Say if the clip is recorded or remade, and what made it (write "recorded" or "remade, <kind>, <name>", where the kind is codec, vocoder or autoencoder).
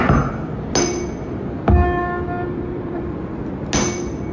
recorded